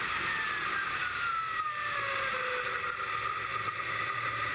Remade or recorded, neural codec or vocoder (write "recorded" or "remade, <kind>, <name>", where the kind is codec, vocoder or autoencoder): recorded